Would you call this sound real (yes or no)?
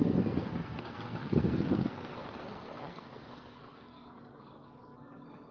no